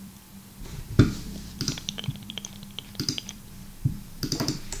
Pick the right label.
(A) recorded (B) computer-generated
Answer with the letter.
B